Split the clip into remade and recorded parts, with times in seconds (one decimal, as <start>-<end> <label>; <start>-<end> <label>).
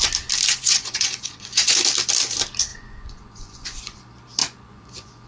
0.0-0.5 recorded; 0.5-1.8 remade; 1.8-2.7 recorded; 2.7-4.0 remade; 4.0-4.4 recorded; 4.4-5.3 remade